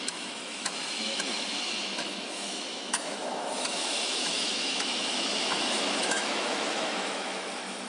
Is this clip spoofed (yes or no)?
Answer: yes